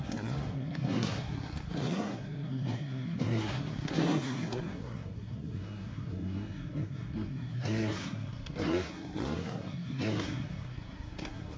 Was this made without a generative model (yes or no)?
no